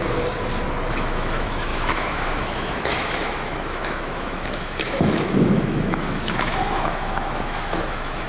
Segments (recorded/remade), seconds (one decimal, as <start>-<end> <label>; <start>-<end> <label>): 0.0-0.9 recorded; 0.9-8.3 remade